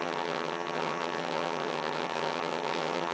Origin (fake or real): fake